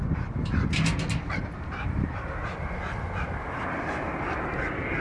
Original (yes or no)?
yes